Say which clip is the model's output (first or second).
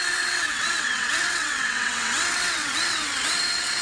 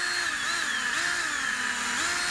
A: first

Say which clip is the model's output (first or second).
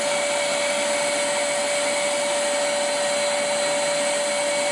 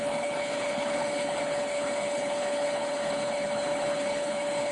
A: second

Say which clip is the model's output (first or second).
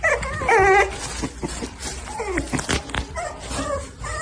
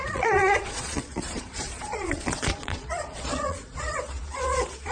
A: second